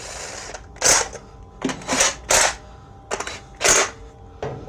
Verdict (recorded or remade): recorded